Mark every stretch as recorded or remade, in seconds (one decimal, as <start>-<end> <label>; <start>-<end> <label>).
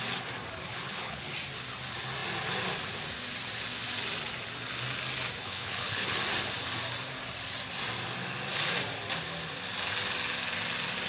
0.0-0.7 recorded; 0.7-1.3 remade; 1.3-5.4 recorded; 5.4-6.2 remade; 6.2-11.1 recorded